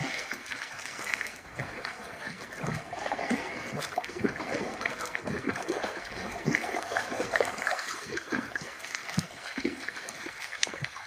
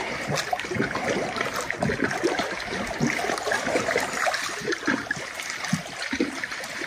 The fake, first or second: first